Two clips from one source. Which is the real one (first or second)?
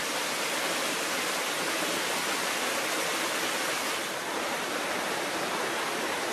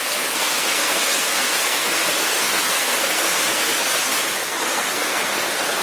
first